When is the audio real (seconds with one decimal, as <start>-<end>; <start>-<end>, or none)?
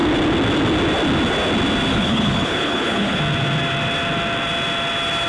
0.0-1.9; 3.2-5.3